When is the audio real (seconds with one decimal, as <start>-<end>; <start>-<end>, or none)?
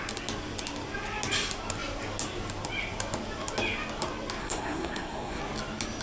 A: 0.0-4.4; 5.4-6.0